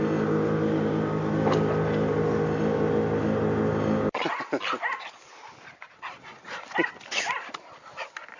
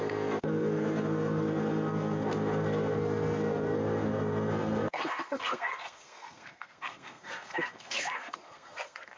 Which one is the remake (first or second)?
second